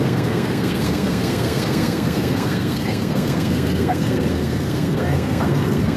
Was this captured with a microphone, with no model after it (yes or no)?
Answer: no